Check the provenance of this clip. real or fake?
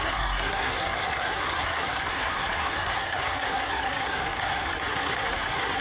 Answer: fake